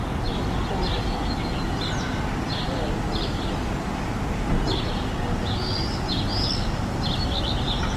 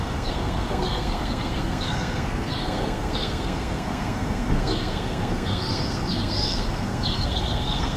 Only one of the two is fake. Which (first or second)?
second